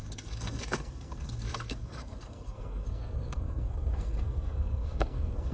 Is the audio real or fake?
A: fake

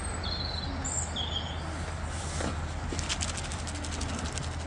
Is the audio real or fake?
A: real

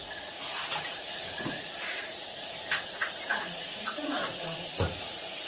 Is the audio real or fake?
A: fake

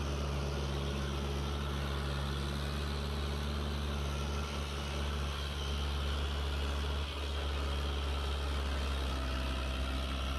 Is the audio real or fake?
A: real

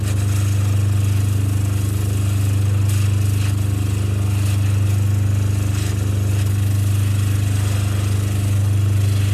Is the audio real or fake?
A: real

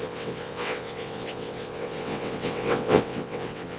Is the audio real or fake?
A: fake